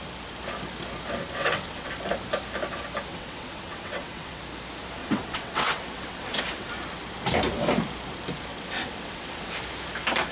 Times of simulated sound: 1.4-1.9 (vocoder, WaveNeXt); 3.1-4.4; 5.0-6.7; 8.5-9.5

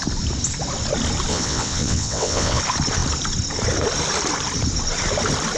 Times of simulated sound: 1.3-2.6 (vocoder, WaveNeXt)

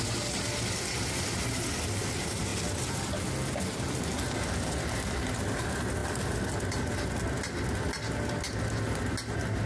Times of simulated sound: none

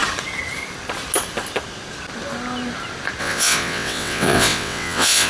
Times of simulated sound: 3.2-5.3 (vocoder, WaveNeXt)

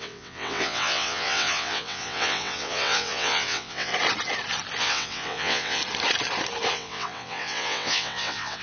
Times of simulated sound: 0.0-3.9 (vocoder, WaveNeXt); 4.8-5.8; 6.7-8.6

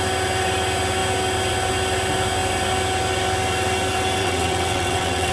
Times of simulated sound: 4.2-5.3 (vocoder, WaveNeXt)